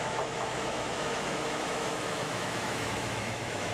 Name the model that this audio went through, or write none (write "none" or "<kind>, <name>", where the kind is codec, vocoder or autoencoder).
autoencoder, DAC-VAE